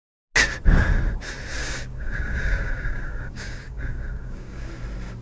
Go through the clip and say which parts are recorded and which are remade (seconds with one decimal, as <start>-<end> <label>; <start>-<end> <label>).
0.0-1.6 recorded; 1.6-4.7 remade; 4.7-5.2 recorded